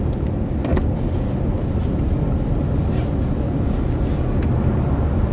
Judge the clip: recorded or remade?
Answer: recorded